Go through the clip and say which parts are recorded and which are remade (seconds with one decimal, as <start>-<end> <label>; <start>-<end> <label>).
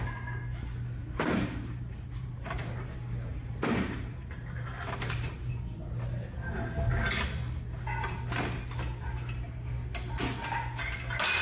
0.0-1.0 recorded; 1.0-5.5 remade; 5.5-11.4 recorded